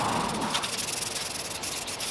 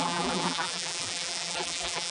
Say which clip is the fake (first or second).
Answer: second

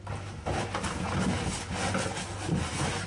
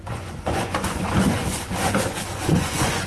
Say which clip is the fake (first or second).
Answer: second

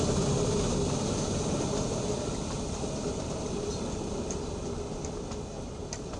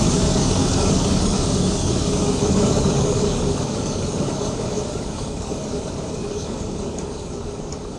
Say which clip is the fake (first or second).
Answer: second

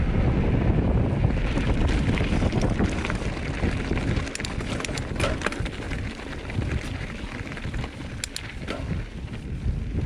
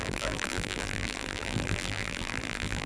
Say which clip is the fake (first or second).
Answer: second